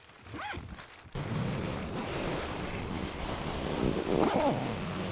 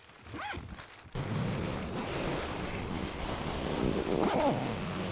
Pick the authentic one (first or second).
second